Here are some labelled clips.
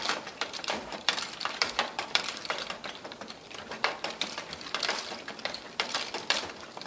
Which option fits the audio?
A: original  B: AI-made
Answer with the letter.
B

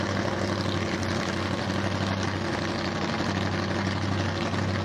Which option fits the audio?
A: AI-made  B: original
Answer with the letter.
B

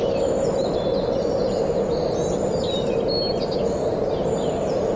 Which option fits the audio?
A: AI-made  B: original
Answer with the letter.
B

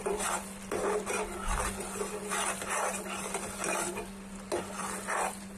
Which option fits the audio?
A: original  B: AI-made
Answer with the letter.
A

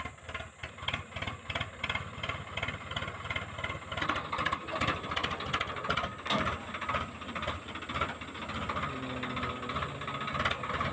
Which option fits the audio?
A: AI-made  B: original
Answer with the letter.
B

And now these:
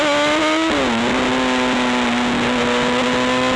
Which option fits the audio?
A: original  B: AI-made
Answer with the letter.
A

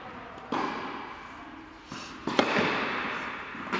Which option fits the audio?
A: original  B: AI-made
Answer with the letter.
A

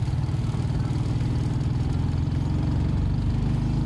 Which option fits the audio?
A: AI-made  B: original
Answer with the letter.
B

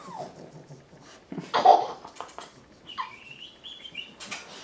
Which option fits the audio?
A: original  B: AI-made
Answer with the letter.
A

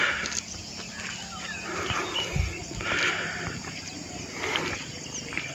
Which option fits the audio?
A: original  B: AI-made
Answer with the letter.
A